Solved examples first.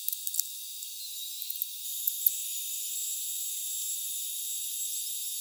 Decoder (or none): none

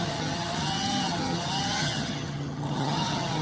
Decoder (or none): vocoder, HiFi-GAN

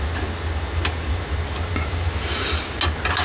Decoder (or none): none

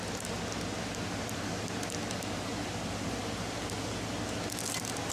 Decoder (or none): none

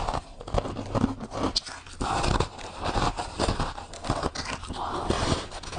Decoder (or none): none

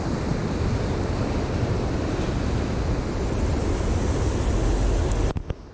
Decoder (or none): none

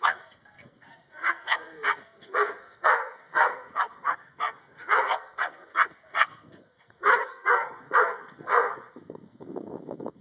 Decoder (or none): codec, SNAC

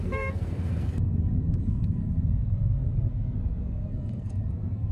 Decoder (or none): codec, SNAC